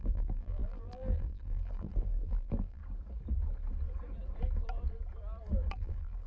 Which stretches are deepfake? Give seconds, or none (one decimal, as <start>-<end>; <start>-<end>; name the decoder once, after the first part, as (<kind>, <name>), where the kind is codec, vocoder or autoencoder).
0.0-2.8 (vocoder, BigVGAN v2); 5.7-6.3

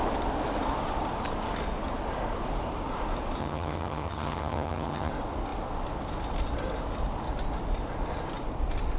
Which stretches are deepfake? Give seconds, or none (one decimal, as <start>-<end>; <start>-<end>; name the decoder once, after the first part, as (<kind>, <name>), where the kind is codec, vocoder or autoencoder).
3.4-5.1 (vocoder, HiFi-GAN)